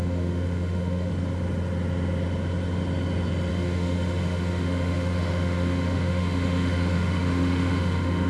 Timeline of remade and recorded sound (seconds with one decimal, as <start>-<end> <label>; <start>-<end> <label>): 0.0-1.1 remade; 1.1-3.5 recorded; 3.5-8.3 remade

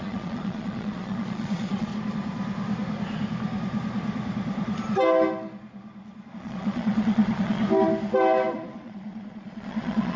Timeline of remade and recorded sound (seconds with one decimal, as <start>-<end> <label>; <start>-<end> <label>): 0.0-1.9 remade; 1.9-6.3 recorded; 6.3-7.6 remade; 7.6-8.5 recorded; 8.5-10.2 remade

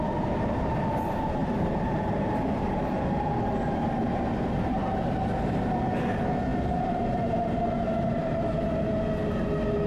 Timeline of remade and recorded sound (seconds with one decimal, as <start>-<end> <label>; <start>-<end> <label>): 0.0-1.4 recorded; 1.4-5.7 remade; 5.7-6.5 recorded; 6.5-8.6 remade; 8.6-9.9 recorded

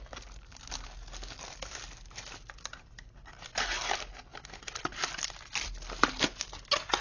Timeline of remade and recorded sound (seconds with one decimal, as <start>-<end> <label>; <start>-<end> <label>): 0.0-7.0 recorded

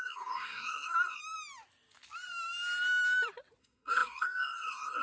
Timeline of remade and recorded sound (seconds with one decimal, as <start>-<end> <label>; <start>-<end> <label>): 0.0-1.2 remade; 1.2-3.6 recorded; 3.6-5.0 remade

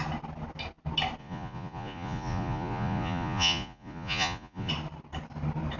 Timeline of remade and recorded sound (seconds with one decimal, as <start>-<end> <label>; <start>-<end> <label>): 0.0-1.2 recorded; 1.2-4.7 remade; 4.7-5.8 recorded